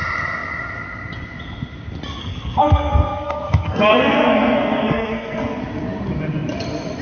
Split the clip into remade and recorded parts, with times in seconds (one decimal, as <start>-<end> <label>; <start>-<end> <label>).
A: 0.0-2.2 recorded; 2.2-5.6 remade; 5.6-7.0 recorded